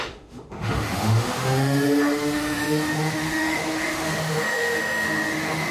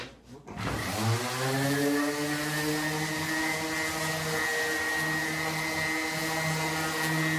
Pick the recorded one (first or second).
second